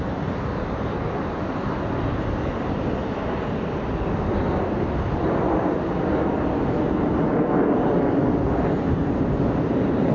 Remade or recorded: recorded